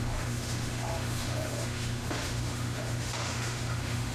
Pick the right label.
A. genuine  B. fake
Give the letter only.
B